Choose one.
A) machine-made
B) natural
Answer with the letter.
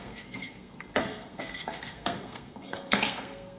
A